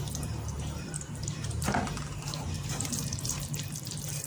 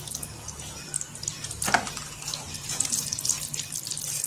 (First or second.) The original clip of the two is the second